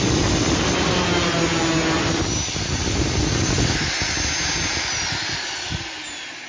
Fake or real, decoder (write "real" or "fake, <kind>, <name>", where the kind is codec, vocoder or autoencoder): real